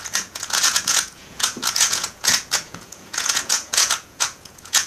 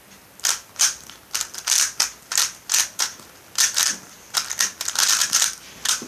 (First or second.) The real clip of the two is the second